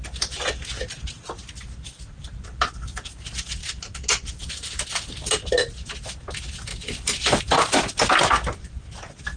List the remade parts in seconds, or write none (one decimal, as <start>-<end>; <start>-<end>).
6.7-7.4